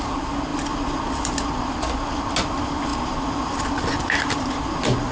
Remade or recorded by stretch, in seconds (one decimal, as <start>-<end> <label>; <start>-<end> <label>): 0.0-5.1 recorded